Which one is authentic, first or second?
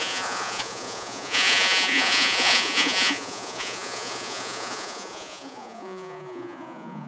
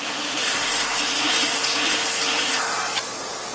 second